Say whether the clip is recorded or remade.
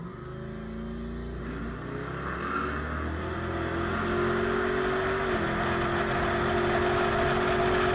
recorded